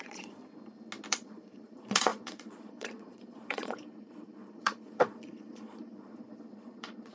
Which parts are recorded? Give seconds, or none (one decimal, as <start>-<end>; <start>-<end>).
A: 0.4-1.1